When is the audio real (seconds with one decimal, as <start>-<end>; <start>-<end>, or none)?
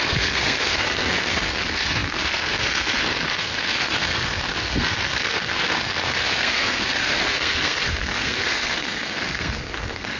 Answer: none